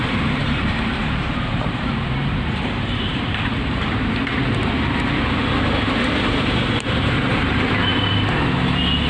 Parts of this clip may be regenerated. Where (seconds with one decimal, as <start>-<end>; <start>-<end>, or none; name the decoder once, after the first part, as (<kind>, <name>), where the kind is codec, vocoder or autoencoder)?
0.0-3.9 (vocoder, BigVGAN v2)